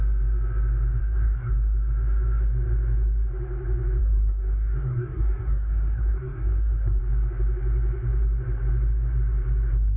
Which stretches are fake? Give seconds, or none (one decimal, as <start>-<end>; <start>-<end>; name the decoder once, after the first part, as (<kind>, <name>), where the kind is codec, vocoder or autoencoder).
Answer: 1.0-1.5 (codec, SNAC); 4.0-7.0